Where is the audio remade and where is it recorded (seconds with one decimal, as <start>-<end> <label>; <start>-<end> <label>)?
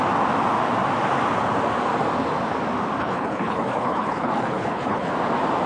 0.0-3.0 recorded; 3.0-5.1 remade; 5.1-5.7 recorded